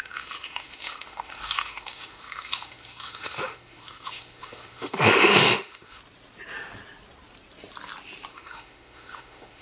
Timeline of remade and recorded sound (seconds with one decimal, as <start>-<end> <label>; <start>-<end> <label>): 0.0-6.0 remade; 6.0-8.3 recorded; 8.3-9.6 remade